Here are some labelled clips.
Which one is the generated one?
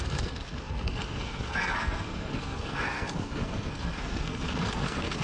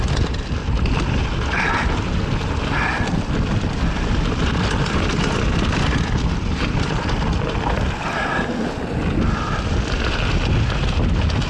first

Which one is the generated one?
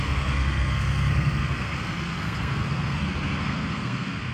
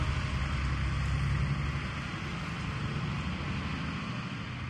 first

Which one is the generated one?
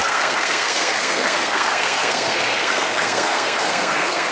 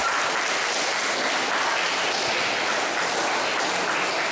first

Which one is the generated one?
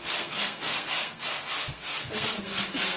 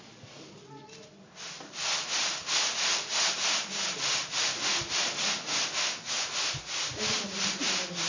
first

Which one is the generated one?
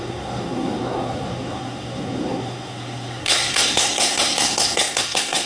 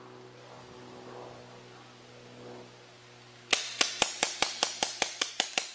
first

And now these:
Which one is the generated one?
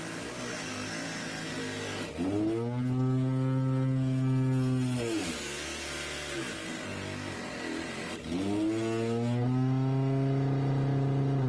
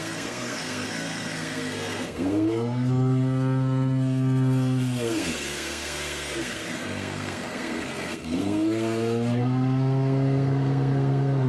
second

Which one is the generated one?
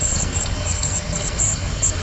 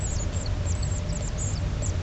first